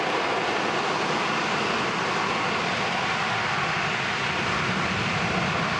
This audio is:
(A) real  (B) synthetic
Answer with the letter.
B